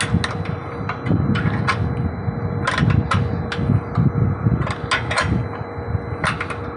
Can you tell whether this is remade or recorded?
recorded